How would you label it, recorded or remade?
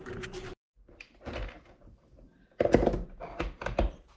recorded